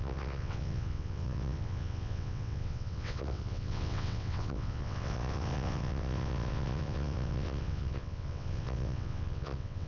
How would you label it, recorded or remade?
remade